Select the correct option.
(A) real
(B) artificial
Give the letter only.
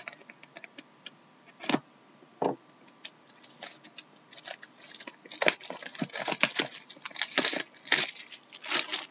A